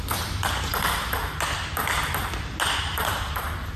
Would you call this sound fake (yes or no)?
no